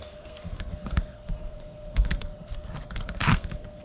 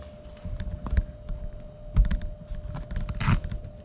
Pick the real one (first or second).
second